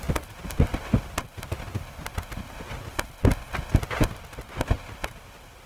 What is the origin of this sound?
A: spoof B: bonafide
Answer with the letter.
B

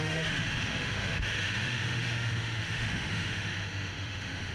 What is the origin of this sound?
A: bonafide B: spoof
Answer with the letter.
B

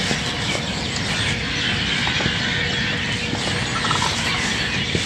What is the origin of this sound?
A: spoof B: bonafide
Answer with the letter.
B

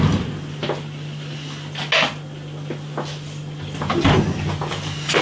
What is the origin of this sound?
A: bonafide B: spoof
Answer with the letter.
A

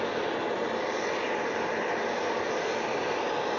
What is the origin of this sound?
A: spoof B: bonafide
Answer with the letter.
B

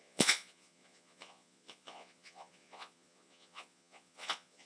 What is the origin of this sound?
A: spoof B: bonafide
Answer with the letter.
A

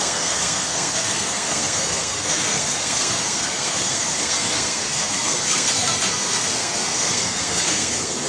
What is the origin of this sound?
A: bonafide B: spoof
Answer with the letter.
B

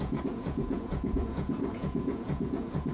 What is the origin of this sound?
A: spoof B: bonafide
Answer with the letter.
A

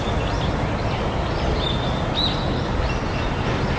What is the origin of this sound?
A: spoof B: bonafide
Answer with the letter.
B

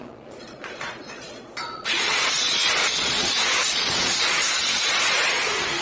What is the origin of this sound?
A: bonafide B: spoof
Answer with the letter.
B